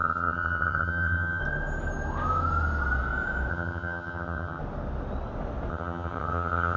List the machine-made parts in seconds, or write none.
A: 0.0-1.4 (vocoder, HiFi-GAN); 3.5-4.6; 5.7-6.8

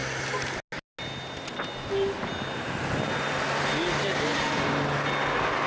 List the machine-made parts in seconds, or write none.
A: none

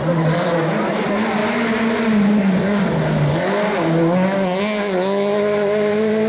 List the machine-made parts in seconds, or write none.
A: none

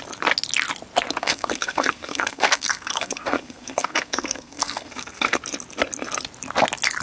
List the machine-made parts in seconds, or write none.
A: 1.2-5.4 (codec, SNAC)

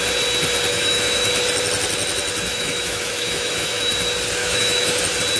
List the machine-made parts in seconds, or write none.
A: 0.7-1.3 (autoencoder, DAC-VAE); 2.5-3.9; 4.4-5.0

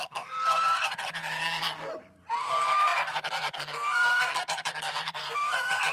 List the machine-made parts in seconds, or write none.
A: 0.0-1.9 (codec, SNAC); 2.4-5.9